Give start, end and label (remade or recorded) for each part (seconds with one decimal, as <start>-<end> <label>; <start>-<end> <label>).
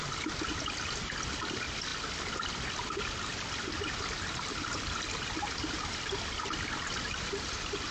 0.0-7.9 recorded